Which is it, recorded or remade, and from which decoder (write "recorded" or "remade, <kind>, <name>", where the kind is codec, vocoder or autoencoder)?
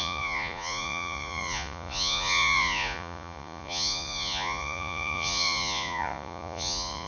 remade, vocoder, Vocos